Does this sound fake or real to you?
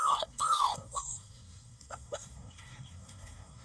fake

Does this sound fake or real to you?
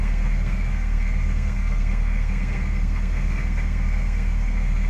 fake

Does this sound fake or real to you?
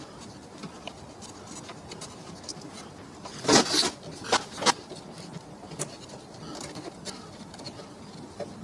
real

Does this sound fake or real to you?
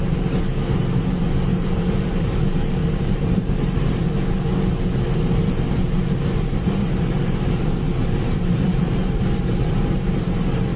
fake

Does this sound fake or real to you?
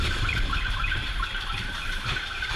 fake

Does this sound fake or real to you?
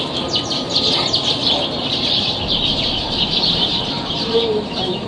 fake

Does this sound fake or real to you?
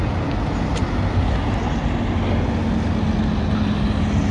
real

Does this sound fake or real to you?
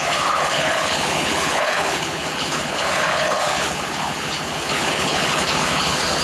fake